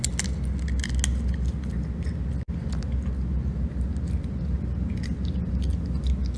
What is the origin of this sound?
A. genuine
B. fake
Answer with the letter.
A